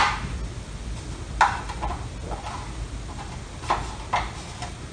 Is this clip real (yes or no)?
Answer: yes